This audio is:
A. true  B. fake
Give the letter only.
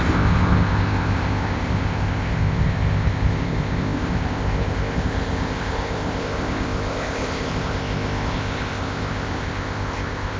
B